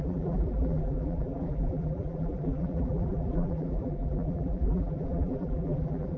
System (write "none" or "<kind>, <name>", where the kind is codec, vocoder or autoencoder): vocoder, BigVGAN v2